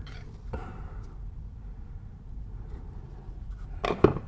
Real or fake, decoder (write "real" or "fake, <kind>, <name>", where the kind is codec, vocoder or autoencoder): fake, vocoder, BigVGAN v2